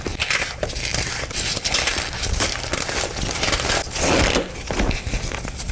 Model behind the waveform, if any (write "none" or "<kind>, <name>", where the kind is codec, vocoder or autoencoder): none